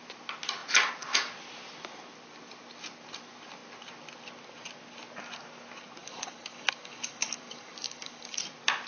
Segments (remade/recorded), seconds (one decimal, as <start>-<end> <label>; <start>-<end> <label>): 0.0-6.0 recorded; 6.0-8.4 remade; 8.4-8.9 recorded